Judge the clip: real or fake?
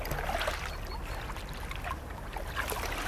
real